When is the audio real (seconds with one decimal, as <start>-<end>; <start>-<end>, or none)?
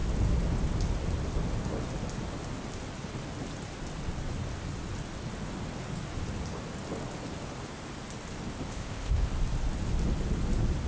0.0-8.7; 9.3-10.9